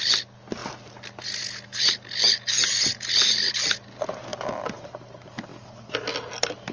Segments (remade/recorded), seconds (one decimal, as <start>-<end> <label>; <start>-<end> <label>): 0.0-6.7 recorded